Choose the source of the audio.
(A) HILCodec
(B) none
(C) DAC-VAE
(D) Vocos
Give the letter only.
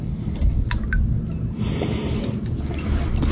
B